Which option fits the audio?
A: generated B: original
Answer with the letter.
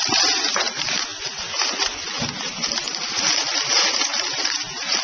B